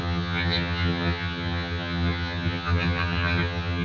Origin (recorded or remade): remade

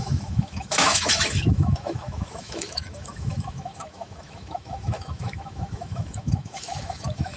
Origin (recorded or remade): remade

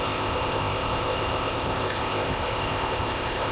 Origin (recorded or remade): remade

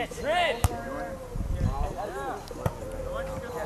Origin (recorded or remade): recorded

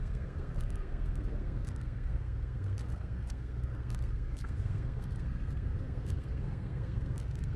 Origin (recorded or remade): remade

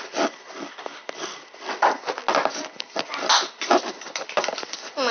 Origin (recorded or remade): recorded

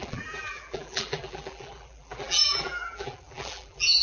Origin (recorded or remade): remade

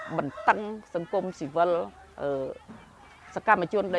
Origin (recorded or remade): recorded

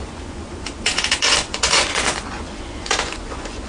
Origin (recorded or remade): remade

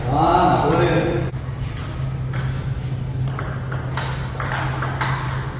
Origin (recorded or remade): recorded